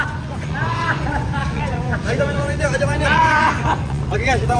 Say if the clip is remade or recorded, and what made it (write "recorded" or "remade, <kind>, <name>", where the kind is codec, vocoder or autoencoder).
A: remade, vocoder, Vocos